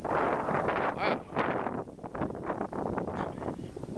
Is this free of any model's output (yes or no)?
yes